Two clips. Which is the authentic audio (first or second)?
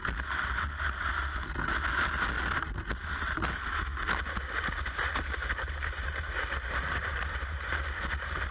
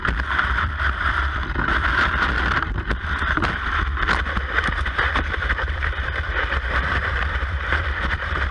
first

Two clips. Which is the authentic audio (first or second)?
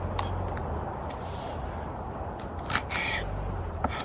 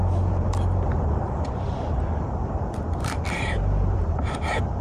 first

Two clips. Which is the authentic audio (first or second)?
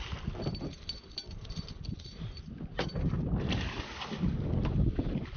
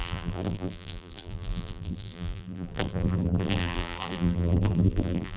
first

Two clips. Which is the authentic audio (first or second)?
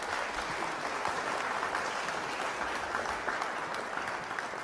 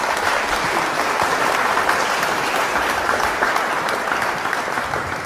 first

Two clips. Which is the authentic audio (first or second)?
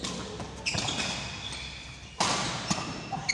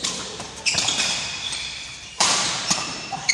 first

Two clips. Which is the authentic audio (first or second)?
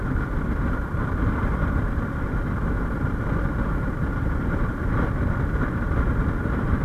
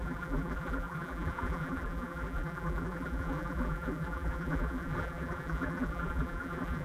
first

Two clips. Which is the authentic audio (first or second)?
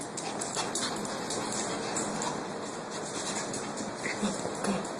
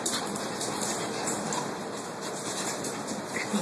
first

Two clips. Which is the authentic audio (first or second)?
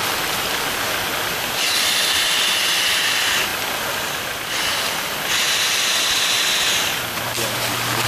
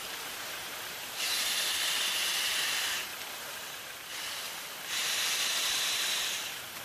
first